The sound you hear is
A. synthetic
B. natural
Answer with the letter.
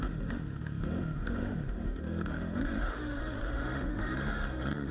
A